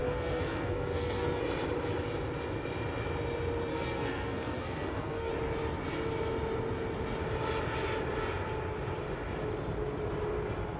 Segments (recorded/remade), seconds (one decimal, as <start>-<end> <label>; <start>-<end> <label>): 0.0-1.4 remade; 1.4-3.7 recorded; 3.7-5.3 remade; 5.3-10.8 recorded